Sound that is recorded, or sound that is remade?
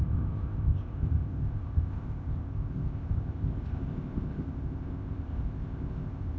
remade